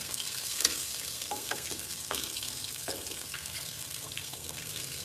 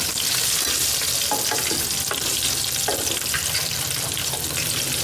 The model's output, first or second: first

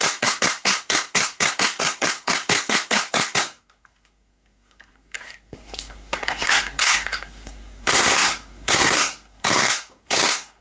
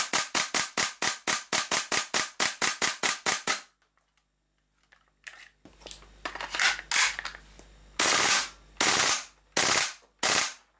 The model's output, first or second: first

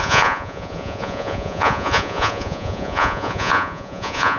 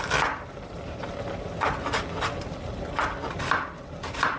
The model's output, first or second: first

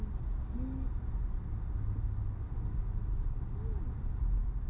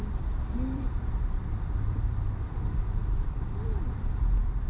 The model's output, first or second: second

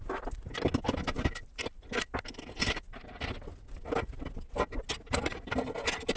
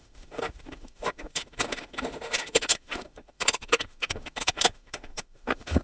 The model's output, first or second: second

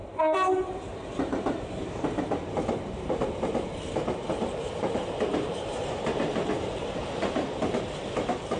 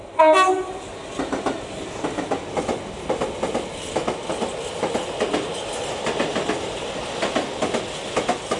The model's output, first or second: first